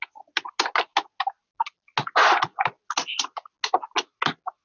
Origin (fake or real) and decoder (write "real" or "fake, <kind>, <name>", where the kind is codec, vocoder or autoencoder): real